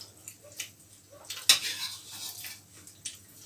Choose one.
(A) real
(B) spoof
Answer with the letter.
A